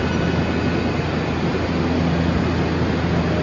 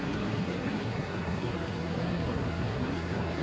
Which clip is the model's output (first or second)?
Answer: second